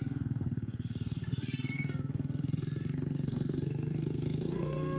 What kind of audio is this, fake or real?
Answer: fake